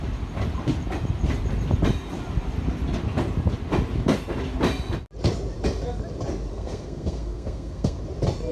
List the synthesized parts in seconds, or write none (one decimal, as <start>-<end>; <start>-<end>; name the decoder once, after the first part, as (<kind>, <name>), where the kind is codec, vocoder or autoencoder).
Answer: 6.5-8.0 (codec, SNAC)